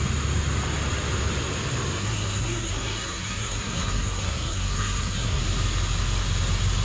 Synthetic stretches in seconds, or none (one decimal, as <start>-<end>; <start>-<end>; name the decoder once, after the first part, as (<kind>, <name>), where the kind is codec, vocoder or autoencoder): 2.0-5.4 (codec, SNAC)